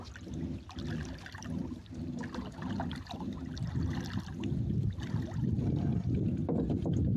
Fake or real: real